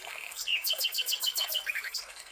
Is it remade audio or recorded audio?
remade